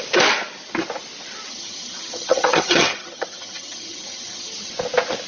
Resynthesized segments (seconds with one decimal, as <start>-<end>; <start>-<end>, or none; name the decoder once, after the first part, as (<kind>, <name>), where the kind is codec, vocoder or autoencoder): 1.5-4.7 (vocoder, HiFi-GAN)